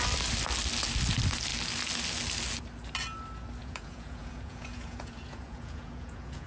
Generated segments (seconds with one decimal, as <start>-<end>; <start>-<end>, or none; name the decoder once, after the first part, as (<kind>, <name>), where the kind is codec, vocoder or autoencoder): 3.6-6.5 (vocoder, Vocos)